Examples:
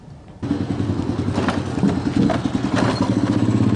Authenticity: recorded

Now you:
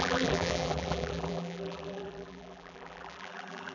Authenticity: remade